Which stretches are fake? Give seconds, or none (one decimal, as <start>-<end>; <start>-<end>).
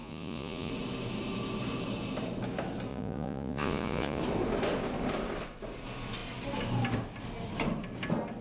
0.0-0.7; 2.9-4.2